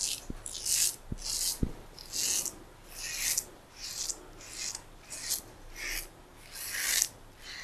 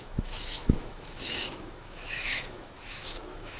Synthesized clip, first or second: second